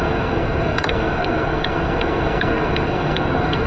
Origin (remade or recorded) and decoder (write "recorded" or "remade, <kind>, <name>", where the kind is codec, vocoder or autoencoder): remade, codec, SNAC